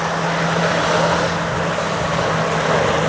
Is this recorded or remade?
recorded